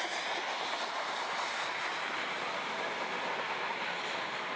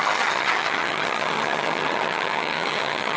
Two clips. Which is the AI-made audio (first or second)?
second